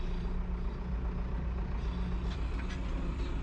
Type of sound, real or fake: real